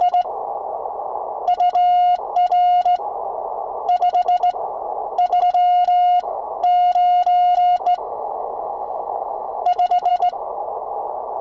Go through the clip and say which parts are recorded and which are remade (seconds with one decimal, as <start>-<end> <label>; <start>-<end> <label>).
0.0-0.4 remade; 0.4-5.4 recorded; 5.4-6.4 remade; 6.4-8.0 recorded; 8.0-10.1 remade; 10.1-11.4 recorded